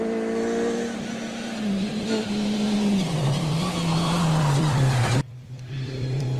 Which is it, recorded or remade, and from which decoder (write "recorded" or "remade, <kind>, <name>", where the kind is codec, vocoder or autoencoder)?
remade, vocoder, BigVGAN v2